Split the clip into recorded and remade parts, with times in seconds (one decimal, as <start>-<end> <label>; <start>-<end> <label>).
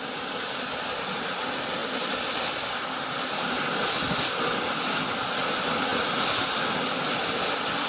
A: 0.0-7.9 recorded